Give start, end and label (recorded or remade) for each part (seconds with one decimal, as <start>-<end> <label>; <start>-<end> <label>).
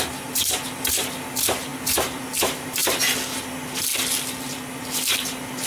0.0-1.7 remade; 1.7-2.4 recorded; 2.4-5.7 remade